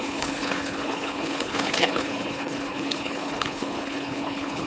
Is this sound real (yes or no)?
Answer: no